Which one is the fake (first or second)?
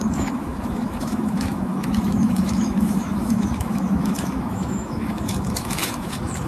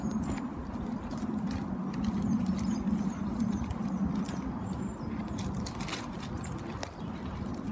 first